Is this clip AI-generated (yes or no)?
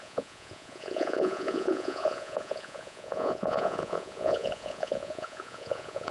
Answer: yes